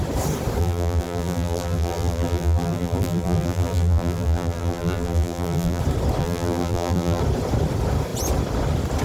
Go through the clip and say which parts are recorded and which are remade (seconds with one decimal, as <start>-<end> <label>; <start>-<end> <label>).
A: 0.0-0.6 recorded; 0.6-5.8 remade; 5.8-6.2 recorded; 6.2-7.2 remade; 7.2-9.0 recorded